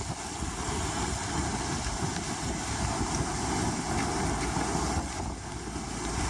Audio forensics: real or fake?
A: real